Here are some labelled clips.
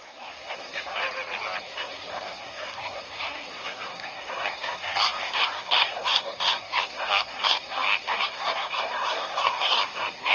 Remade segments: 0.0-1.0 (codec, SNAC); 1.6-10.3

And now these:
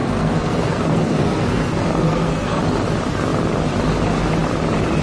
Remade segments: 0.0-2.6 (codec, SNAC)

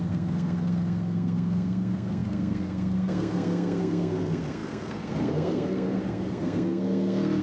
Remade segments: 0.0-7.4 (codec, SNAC)

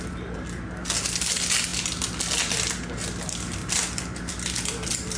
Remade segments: none

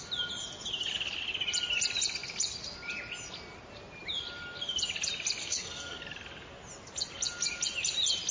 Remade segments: 5.4-6.0 (codec, SNAC)

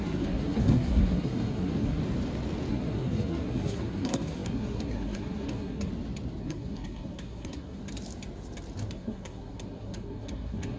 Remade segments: 0.0-2.0 (codec, SNAC); 2.7-5.9; 6.4-7.8; 8.9-10.8

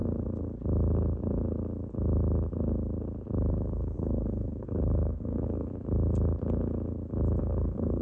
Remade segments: 3.5-5.7 (codec, SNAC); 7.4-8.0